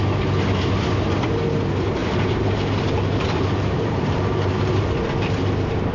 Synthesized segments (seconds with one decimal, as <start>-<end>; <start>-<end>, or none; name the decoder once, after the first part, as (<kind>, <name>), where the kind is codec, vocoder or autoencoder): 2.0-4.8 (vocoder, BigVGAN v2)